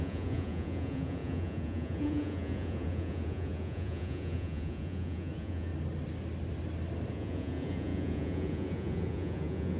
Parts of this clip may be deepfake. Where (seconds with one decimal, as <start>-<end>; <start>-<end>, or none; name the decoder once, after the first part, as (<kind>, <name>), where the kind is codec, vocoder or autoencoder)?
0.0-5.7 (vocoder, Vocos); 7.1-9.8